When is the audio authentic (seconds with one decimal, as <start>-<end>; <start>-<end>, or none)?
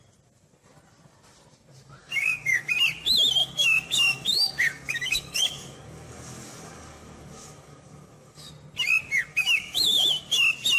0.0-2.0; 2.7-3.4; 8.5-9.3; 10.4-10.8